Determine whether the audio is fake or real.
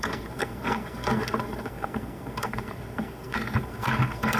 fake